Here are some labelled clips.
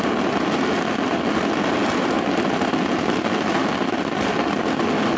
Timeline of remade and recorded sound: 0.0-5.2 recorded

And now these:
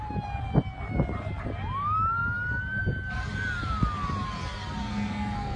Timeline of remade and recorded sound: 0.0-4.8 recorded; 4.8-5.6 remade